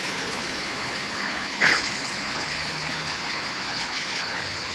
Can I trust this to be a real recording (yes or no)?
no